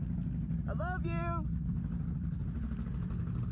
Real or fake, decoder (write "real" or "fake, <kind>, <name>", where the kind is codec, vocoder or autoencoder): real